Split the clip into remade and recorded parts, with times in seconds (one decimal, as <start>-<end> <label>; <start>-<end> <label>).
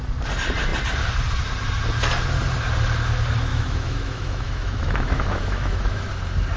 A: 0.0-3.5 recorded; 3.5-6.1 remade; 6.1-6.6 recorded